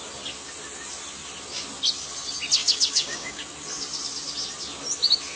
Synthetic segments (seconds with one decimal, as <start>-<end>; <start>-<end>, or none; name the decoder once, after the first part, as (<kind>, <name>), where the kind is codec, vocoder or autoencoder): 2.6-3.4 (codec, DAC)